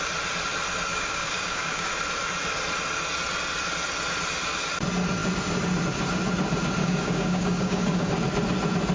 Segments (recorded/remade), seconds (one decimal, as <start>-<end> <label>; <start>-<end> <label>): 0.0-0.9 recorded; 0.9-1.9 remade; 1.9-6.8 recorded; 6.8-8.1 remade; 8.1-8.9 recorded